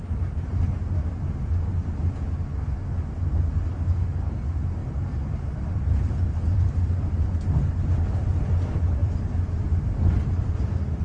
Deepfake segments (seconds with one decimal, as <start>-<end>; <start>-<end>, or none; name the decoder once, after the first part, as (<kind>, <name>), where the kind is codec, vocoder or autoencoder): 4.8-7.2 (vocoder, BigVGAN v2); 9.0-9.9